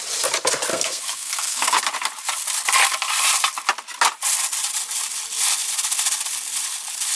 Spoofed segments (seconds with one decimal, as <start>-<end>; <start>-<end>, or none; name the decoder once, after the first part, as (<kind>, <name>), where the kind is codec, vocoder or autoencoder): 0.7-1.8 (codec, SNAC)